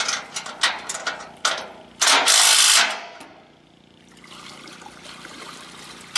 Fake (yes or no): no